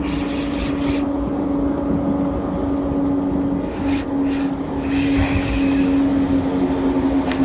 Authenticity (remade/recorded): recorded